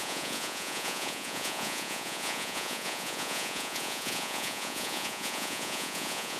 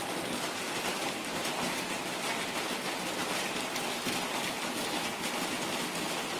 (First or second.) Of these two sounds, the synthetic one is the first